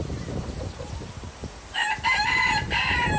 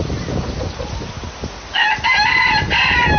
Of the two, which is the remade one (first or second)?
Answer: first